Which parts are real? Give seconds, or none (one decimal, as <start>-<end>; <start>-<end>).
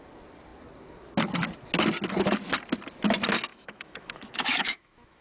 0.0-3.5